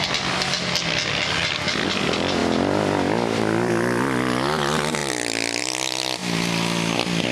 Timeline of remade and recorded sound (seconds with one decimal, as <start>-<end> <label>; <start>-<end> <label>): 0.0-2.4 recorded; 2.4-3.7 remade; 3.7-5.0 recorded; 5.0-5.6 remade; 5.6-7.3 recorded

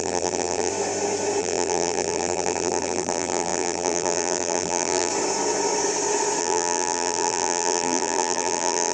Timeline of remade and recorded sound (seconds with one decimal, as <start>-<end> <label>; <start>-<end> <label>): 0.0-0.7 remade; 0.7-1.4 recorded; 1.4-5.1 remade; 5.1-6.4 recorded; 6.4-8.9 remade

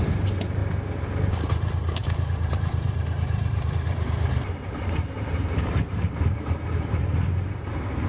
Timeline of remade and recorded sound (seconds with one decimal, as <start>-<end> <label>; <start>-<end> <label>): 0.0-0.6 remade; 0.6-1.3 recorded; 1.3-8.1 remade

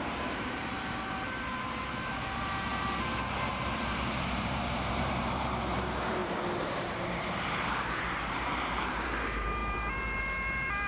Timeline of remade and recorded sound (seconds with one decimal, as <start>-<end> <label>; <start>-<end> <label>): 0.0-2.7 remade; 2.7-3.5 recorded; 3.5-10.9 remade

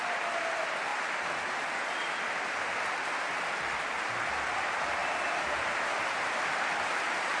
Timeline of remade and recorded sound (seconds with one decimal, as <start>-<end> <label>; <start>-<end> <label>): 0.0-5.0 recorded; 5.0-7.4 remade

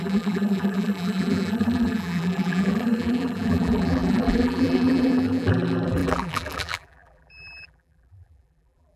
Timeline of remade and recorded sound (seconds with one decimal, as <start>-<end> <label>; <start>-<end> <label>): 0.0-9.0 remade

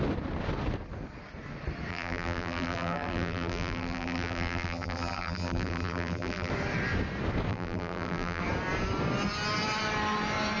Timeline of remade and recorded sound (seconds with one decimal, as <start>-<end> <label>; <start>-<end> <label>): 0.0-1.9 recorded; 1.9-6.5 remade; 6.5-7.5 recorded; 7.5-8.4 remade; 8.4-10.6 recorded

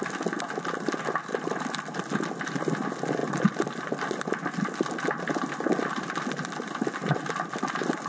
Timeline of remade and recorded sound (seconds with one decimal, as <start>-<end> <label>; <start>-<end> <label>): 0.0-1.3 recorded; 1.3-2.4 remade; 2.4-3.2 recorded; 3.2-3.8 remade; 3.8-7.0 recorded; 7.0-8.1 remade